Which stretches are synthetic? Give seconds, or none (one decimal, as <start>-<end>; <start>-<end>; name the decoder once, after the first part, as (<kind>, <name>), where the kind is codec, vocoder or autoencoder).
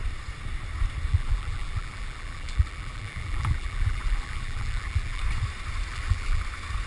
1.1-5.2 (vocoder, BigVGAN v2); 5.9-6.4